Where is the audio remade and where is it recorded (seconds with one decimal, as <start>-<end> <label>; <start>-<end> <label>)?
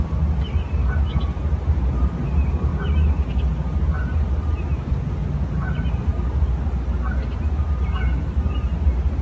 0.0-9.2 recorded